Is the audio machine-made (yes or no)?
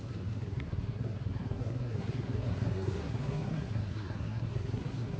yes